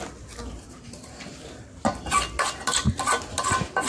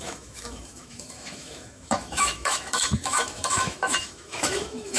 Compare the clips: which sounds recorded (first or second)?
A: first